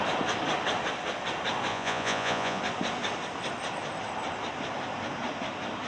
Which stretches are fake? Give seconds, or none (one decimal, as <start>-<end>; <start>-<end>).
1.7-2.6